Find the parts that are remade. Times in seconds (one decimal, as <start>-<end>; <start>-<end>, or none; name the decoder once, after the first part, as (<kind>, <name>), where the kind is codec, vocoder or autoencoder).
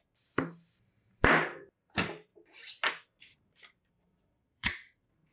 4.1-4.7 (vocoder, Vocos)